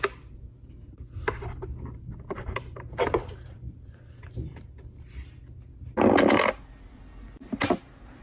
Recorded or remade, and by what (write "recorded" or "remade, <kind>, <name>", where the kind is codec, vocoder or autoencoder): recorded